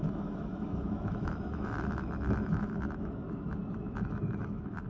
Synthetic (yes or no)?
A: yes